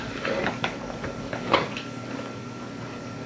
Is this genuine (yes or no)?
no